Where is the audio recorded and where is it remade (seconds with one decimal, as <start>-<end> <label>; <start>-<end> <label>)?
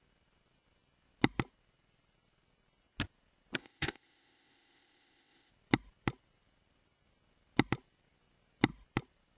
0.0-3.6 recorded; 3.6-5.5 remade; 5.5-9.4 recorded